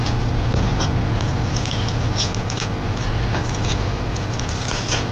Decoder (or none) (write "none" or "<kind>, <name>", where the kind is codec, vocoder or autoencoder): none